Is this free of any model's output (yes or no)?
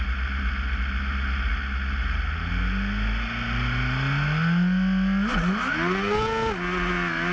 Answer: yes